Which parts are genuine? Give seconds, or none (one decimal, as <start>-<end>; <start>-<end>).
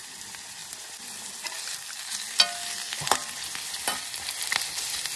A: 0.0-5.2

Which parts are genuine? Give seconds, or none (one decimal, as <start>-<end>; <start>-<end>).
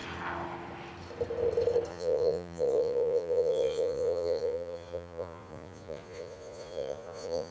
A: 0.0-1.9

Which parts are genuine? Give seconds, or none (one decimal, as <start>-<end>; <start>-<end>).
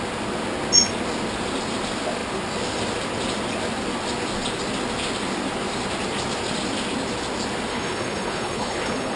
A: 0.0-7.7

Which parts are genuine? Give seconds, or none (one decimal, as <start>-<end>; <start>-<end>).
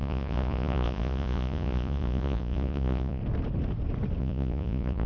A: 3.2-4.2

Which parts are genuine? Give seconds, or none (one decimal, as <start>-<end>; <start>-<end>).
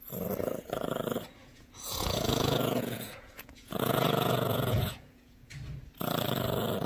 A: 0.0-1.4; 5.5-6.9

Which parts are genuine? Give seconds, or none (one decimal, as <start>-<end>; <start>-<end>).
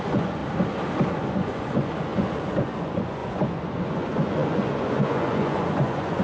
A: 0.4-1.1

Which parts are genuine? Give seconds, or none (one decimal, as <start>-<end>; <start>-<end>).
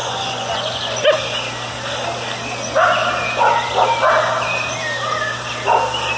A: 1.0-6.2